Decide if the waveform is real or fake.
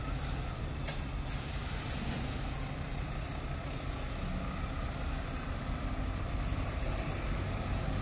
real